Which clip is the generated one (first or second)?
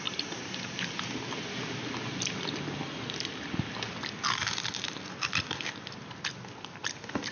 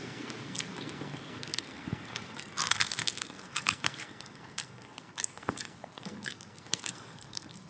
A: second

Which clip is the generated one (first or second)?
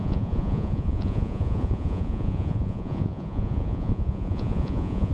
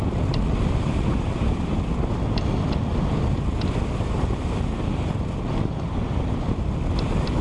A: first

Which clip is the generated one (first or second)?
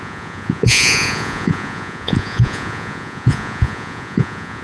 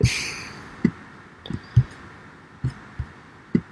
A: first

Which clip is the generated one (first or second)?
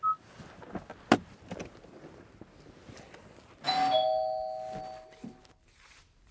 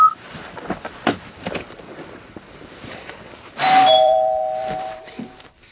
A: second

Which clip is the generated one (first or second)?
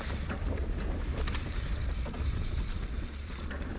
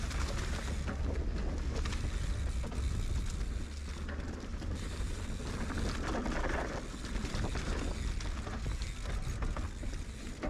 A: first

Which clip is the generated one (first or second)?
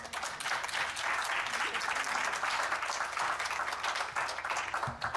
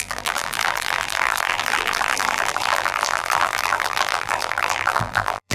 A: second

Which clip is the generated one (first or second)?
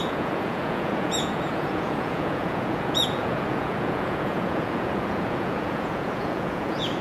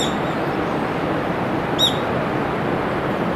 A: first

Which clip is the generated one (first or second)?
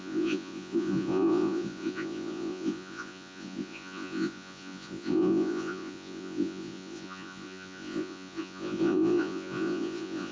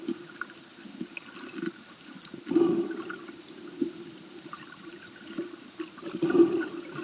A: first